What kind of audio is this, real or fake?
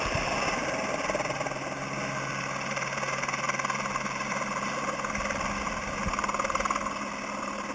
real